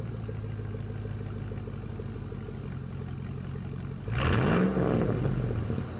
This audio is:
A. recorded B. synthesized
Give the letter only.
A